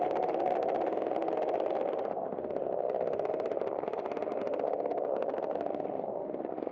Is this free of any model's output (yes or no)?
no